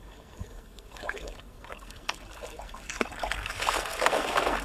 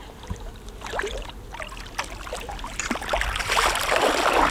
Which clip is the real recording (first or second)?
second